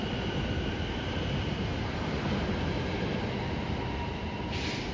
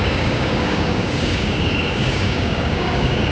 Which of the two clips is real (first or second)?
first